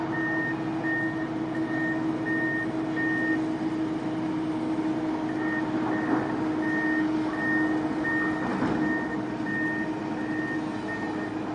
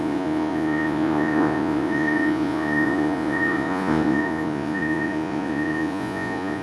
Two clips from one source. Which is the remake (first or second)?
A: second